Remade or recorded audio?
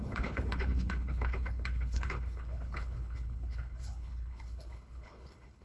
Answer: remade